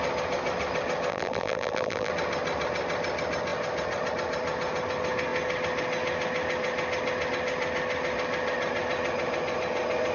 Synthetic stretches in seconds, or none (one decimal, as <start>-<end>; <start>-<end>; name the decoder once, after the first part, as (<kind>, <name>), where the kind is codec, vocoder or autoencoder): 1.1-2.1 (vocoder, BigVGAN v2)